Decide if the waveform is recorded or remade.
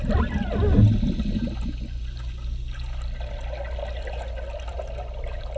recorded